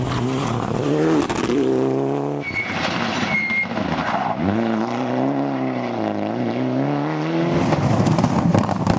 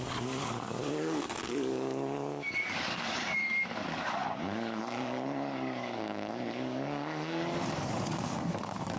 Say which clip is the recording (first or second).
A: first